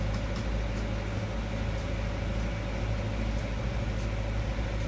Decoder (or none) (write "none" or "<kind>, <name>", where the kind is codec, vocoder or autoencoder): none